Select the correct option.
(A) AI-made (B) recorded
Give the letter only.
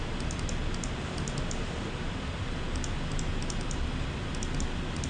B